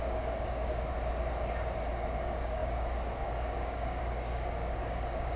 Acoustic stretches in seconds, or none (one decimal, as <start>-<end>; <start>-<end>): 0.9-1.9